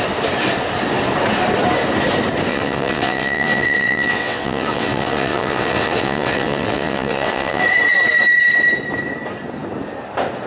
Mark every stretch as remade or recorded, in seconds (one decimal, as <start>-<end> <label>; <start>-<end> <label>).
0.0-2.5 recorded; 2.5-7.6 remade; 7.6-10.5 recorded